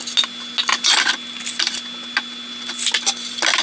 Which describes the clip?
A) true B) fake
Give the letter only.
A